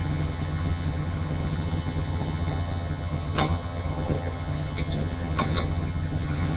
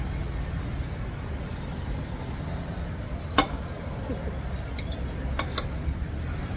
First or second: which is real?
second